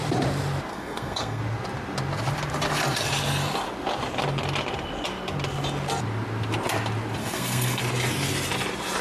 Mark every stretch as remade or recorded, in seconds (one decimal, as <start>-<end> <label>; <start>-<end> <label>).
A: 0.0-0.7 recorded; 0.7-1.4 remade; 1.4-7.2 recorded; 7.2-7.8 remade; 7.8-9.0 recorded

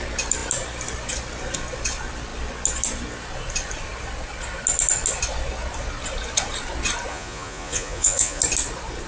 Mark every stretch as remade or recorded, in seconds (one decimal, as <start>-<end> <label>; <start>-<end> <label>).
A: 0.0-7.1 recorded; 7.1-8.4 remade; 8.4-9.1 recorded

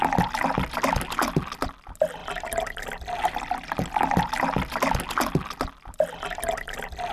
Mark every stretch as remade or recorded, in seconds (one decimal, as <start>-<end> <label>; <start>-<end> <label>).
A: 0.0-7.1 recorded

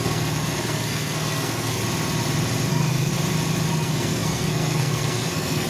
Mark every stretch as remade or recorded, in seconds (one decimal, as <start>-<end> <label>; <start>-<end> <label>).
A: 0.0-1.8 remade; 1.8-2.7 recorded; 2.7-3.1 remade; 3.1-3.7 recorded; 3.7-5.7 remade

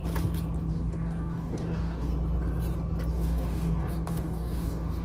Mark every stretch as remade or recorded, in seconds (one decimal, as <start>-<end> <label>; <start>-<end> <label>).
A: 0.0-0.7 recorded; 0.7-2.1 remade; 2.1-3.1 recorded; 3.1-5.0 remade